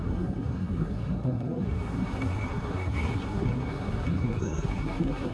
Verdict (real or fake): fake